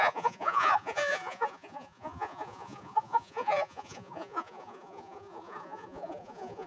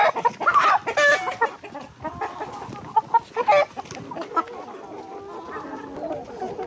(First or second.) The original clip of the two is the second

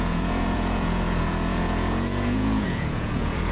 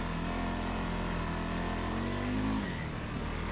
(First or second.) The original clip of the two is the second